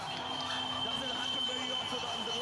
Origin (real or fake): real